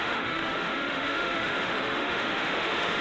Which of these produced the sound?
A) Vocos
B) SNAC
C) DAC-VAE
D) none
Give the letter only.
C